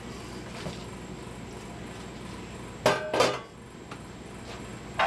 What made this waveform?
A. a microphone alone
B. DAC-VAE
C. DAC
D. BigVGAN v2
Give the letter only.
A